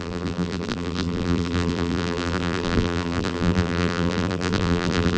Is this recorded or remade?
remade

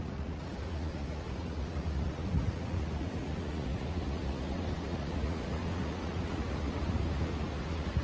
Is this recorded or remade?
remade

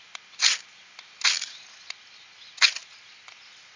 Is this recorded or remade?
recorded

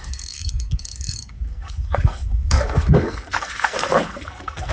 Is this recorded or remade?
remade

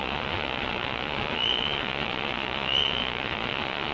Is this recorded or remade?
remade